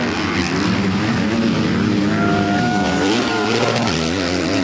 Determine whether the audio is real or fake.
real